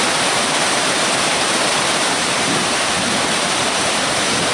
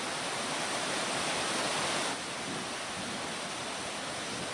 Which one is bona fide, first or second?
second